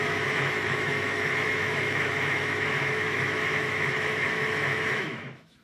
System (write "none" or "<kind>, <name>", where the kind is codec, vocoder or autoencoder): autoencoder, DAC-VAE